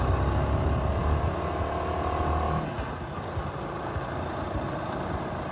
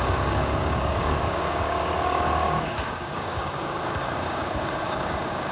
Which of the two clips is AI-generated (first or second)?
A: second